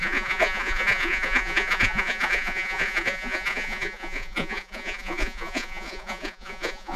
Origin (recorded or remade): remade